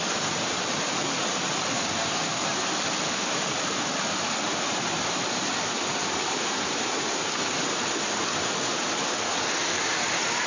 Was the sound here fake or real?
real